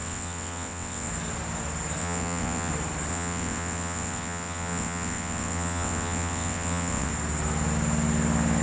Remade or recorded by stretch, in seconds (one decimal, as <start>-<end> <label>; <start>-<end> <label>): 0.0-1.1 remade; 1.1-2.0 recorded; 2.0-2.7 remade; 2.7-3.1 recorded; 3.1-7.1 remade; 7.1-8.6 recorded